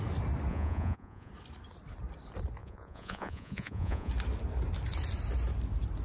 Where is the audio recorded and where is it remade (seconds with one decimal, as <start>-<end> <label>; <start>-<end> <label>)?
0.0-0.5 recorded; 0.5-1.3 remade; 1.3-2.6 recorded; 2.6-4.1 remade; 4.1-6.0 recorded